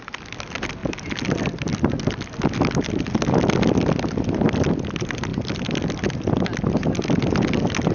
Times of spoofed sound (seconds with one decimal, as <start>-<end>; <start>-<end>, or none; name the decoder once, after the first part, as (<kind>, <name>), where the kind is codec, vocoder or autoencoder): none